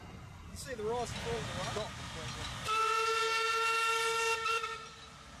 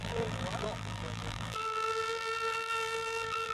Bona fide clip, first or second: first